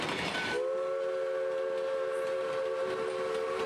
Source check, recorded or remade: recorded